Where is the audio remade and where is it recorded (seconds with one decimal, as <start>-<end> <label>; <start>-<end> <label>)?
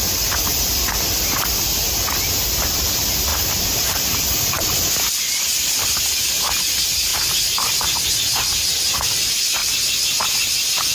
0.0-3.3 recorded; 3.3-4.8 remade; 4.8-10.9 recorded